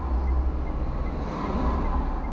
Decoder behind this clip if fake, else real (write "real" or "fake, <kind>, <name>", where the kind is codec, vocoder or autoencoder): real